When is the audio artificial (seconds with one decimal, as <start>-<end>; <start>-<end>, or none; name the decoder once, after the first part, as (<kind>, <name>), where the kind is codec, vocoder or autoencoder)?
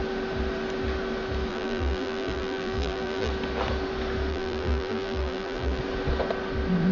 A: 1.5-3.3 (vocoder, BigVGAN v2); 4.3-5.8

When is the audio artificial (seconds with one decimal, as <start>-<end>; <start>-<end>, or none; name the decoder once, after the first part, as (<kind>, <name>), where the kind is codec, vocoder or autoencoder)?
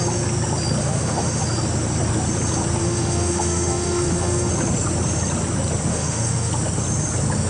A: 0.8-1.4 (autoencoder, DAC-VAE); 2.8-4.5; 5.9-6.5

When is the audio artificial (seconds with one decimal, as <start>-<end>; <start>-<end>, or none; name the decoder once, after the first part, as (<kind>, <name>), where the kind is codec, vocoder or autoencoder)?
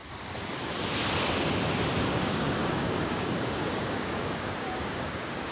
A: 2.0-5.5 (codec, DAC)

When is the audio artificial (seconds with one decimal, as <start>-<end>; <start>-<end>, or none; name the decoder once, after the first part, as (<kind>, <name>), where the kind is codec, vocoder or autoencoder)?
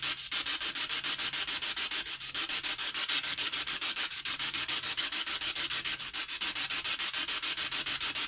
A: 2.8-6.3 (codec, DAC)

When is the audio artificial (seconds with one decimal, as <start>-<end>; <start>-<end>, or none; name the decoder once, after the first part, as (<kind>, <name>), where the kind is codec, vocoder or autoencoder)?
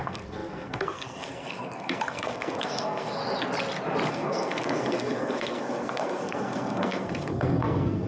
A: 0.0-3.2 (codec, SNAC); 4.1-8.1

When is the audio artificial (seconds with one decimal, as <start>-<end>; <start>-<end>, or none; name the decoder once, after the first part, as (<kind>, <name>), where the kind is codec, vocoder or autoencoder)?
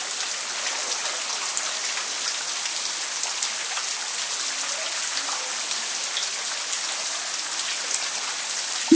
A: none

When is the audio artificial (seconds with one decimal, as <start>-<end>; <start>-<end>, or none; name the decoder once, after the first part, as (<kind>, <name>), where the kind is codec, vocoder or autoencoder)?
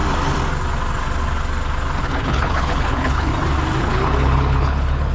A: 2.0-3.3 (codec, HILCodec); 3.8-5.1